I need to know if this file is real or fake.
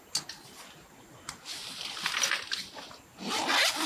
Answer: real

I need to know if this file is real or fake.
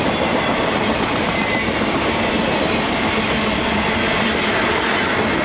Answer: real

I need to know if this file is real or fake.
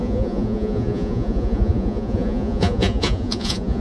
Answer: fake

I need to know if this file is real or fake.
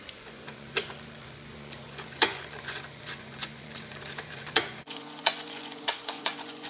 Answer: fake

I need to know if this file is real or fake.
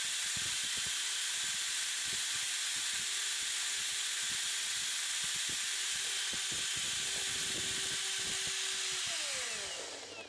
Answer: real